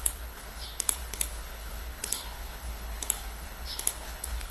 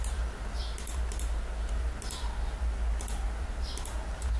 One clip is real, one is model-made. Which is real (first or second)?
second